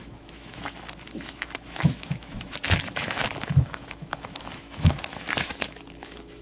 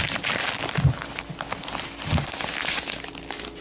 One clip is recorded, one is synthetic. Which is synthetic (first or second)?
first